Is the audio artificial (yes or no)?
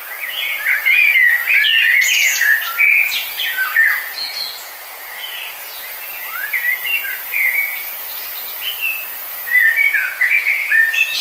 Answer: yes